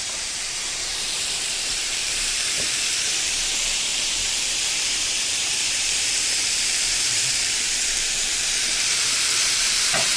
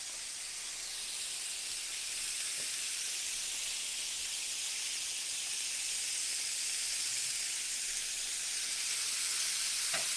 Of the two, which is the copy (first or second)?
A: first